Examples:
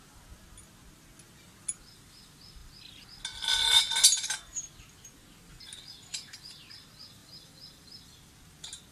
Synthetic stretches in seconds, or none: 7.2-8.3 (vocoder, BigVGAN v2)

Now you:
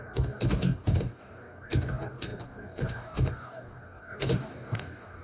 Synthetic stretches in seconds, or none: 0.0-5.2 (codec, DAC)

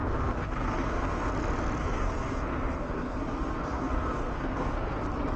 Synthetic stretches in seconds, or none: 0.0-1.3 (codec, SNAC); 1.8-5.0

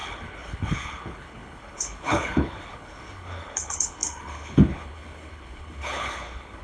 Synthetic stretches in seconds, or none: 0.0-6.6 (codec, HILCodec)

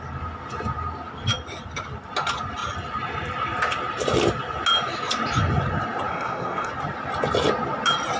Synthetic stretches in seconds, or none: 6.1-6.7 (codec, SNAC)

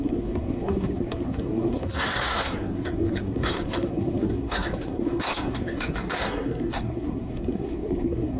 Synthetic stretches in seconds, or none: 0.0-8.4 (codec, SNAC)